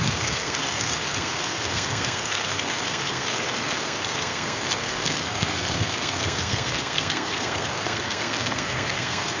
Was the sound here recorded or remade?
remade